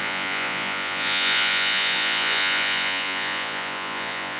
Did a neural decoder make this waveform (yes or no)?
yes